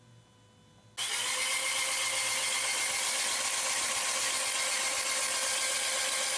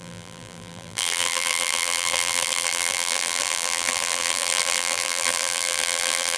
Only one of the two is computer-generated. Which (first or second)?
second